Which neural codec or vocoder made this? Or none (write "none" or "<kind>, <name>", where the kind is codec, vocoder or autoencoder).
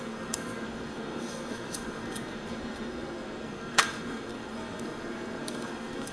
codec, SNAC